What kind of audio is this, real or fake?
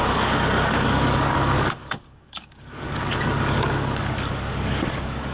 fake